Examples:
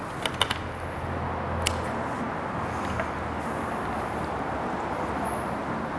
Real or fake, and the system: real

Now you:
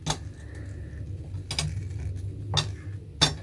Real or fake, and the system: real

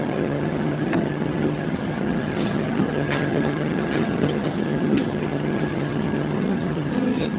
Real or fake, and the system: fake, vocoder, HiFi-GAN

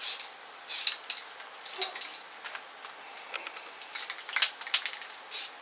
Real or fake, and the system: real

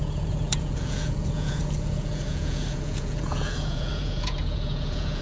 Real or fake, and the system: fake, vocoder, Vocos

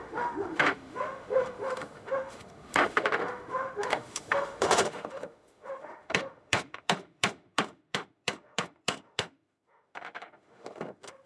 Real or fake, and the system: fake, autoencoder, DAC-VAE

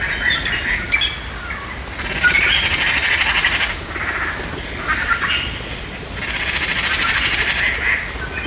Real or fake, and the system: real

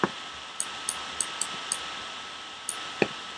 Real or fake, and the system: real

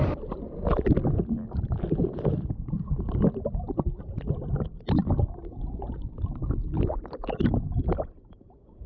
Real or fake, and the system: real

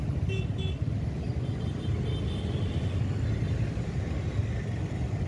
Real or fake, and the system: real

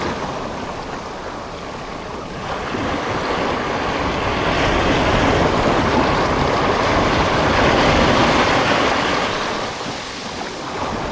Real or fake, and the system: real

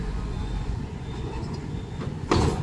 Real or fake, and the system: fake, vocoder, Vocos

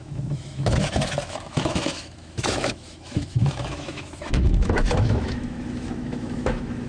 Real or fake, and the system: fake, autoencoder, DAC-VAE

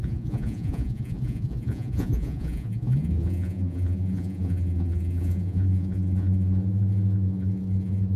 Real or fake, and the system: fake, vocoder, Vocos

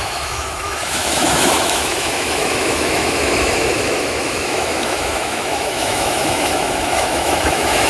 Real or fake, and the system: fake, autoencoder, DAC-VAE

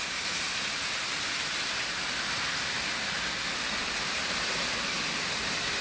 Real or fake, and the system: real